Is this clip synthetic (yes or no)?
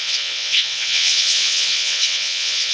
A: yes